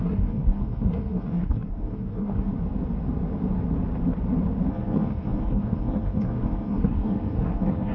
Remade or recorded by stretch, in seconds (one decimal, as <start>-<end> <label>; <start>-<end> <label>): 0.0-2.5 remade; 2.5-4.7 recorded; 4.7-7.9 remade